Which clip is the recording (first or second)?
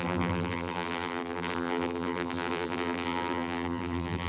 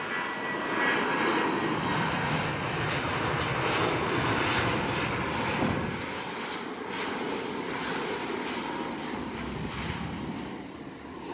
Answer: second